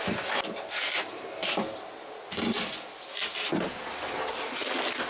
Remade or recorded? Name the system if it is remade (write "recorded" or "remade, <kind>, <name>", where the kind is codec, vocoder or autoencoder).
recorded